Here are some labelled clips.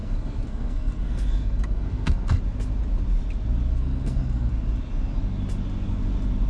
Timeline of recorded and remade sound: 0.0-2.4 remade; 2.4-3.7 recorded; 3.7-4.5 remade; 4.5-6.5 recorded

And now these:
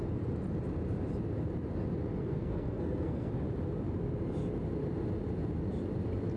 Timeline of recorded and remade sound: 0.0-2.2 recorded; 2.2-3.3 remade; 3.3-6.4 recorded

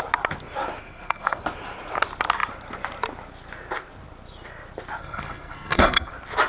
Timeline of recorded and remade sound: 0.0-0.8 recorded; 0.8-1.4 remade; 1.4-5.0 recorded; 5.0-6.1 remade; 6.1-6.5 recorded

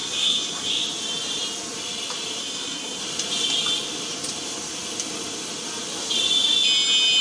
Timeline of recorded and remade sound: 0.0-0.7 remade; 0.7-2.4 recorded; 2.4-3.0 remade; 3.0-7.2 recorded